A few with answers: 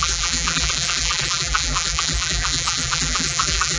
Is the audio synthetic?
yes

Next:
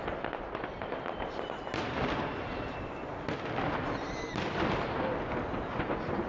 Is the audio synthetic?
no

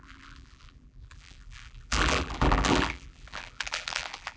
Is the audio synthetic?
yes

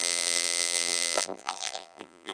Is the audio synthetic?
yes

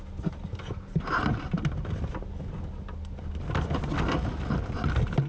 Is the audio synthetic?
no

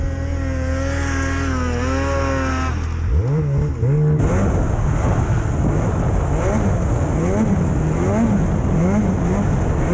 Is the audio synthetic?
no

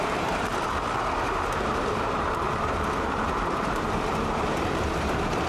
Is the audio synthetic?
yes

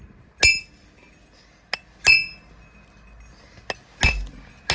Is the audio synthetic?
no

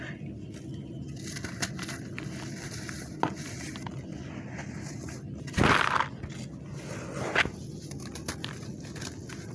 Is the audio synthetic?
no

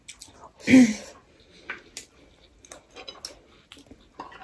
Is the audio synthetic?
no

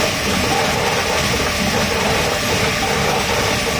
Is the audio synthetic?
no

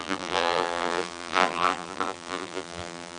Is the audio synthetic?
yes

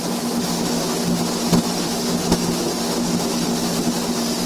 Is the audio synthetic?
no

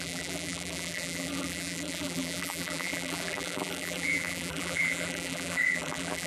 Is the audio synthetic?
yes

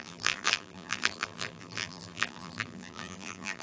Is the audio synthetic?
yes